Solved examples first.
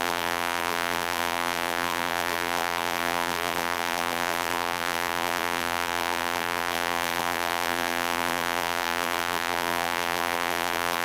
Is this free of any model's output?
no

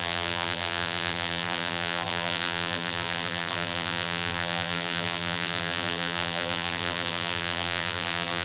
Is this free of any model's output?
no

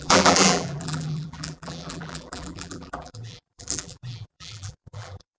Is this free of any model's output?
no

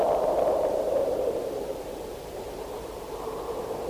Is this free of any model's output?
no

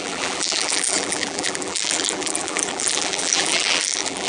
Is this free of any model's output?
no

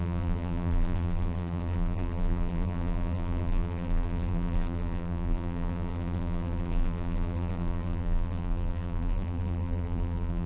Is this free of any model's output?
no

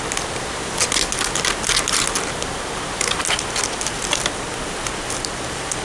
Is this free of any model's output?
yes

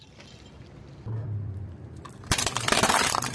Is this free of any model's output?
no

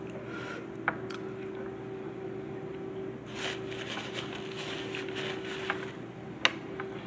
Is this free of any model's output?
yes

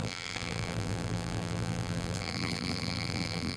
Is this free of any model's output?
no